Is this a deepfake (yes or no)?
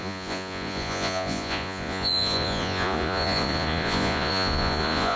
yes